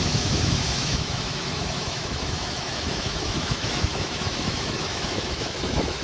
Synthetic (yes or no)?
yes